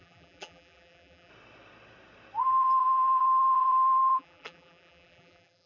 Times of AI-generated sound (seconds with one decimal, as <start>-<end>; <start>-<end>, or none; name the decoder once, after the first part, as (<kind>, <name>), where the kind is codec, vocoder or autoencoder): 0.0-1.3 (vocoder, BigVGAN v2); 2.4-5.7